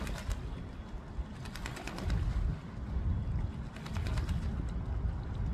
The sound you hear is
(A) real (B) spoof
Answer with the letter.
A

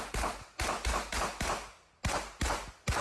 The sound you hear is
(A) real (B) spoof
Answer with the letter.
A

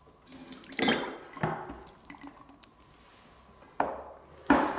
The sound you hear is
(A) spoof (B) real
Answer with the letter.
B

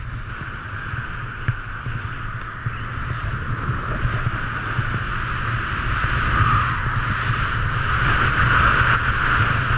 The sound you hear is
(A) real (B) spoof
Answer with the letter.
A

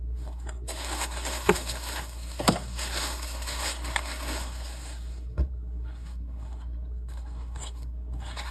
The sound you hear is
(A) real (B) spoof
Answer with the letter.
B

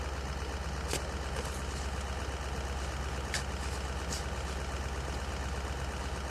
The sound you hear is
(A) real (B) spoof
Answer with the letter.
A